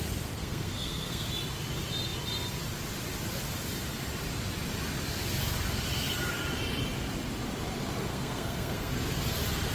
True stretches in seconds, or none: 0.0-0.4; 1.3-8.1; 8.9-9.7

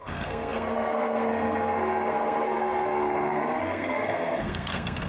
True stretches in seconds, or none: none

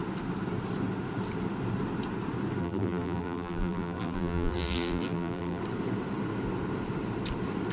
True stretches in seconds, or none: 0.0-2.6; 5.6-7.7